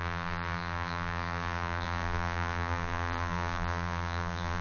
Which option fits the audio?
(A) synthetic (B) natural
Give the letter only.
A